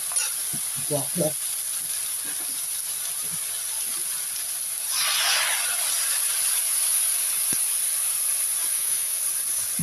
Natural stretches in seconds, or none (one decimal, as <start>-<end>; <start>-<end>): 0.0-8.7; 9.2-9.8